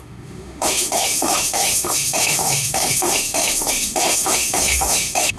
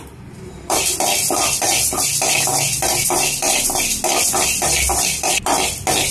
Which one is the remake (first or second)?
first